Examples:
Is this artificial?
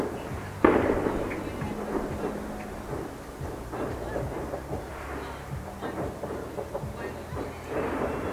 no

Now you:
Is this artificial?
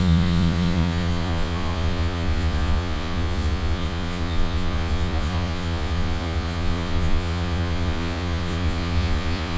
yes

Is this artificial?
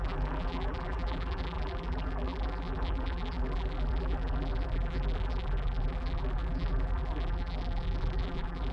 yes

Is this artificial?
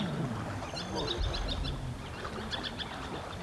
no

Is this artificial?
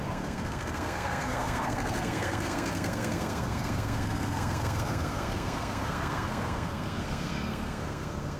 yes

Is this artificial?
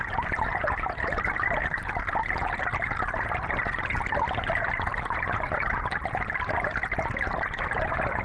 no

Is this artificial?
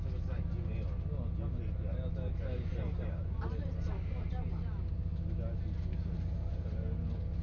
no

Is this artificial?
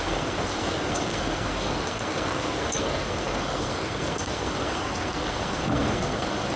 yes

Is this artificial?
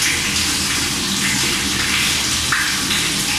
no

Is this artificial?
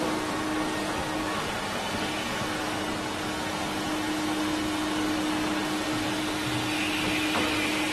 no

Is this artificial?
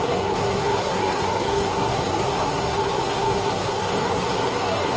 yes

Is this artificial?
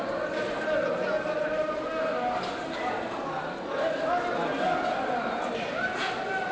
no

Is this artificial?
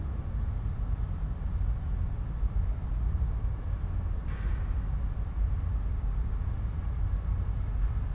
no